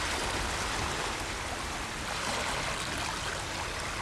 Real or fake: real